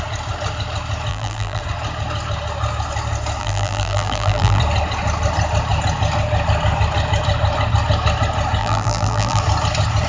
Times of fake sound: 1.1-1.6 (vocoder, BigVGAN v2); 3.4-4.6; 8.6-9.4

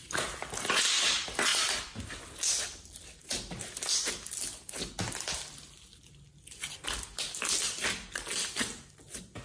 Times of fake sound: 1.5-2.1 (vocoder, BigVGAN v2)

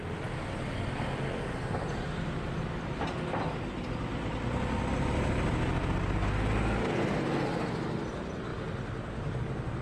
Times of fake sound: none

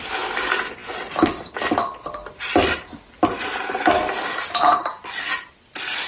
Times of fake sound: none

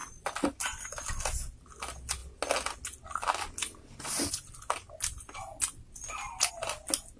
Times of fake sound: 0.0-1.1 (vocoder, BigVGAN v2)

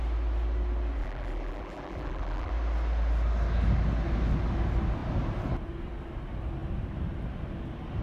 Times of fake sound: 1.0-2.5 (vocoder, BigVGAN v2)